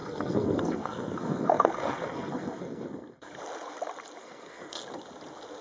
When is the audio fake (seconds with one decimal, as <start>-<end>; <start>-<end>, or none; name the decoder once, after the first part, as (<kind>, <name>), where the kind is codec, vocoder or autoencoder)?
0.0-3.3 (codec, SNAC); 4.2-4.8